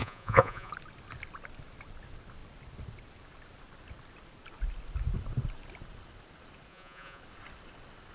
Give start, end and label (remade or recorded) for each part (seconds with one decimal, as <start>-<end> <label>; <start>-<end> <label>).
0.0-0.7 remade; 0.7-6.7 recorded; 6.7-7.2 remade; 7.2-8.1 recorded